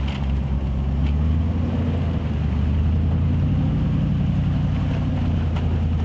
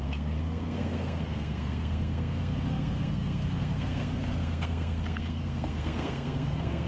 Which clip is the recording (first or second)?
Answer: first